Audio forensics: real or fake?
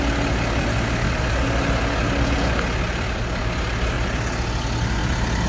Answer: real